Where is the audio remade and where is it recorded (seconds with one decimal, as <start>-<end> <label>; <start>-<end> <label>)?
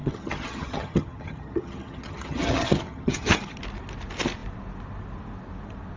0.0-3.6 remade; 3.6-6.0 recorded